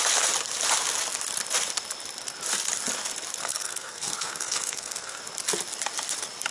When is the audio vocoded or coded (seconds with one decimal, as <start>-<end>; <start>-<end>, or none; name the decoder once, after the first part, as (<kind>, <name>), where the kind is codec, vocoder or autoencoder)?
3.4-5.2 (codec, SNAC)